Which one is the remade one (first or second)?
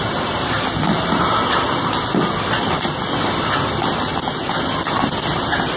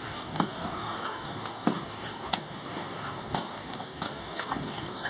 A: second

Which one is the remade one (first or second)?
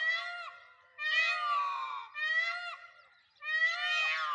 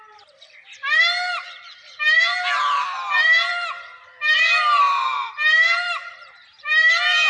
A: second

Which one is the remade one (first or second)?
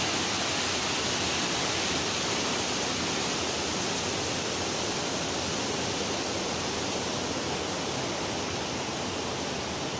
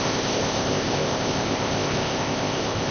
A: second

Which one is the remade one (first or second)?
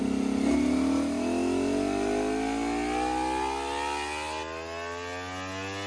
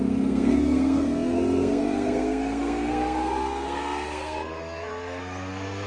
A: second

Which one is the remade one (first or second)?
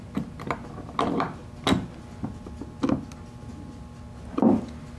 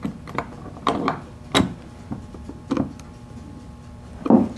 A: second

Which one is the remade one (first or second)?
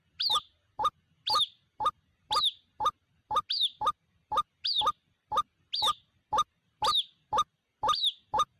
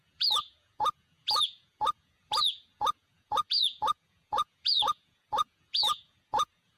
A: second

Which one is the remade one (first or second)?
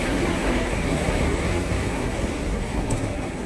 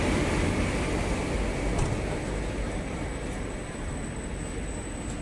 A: first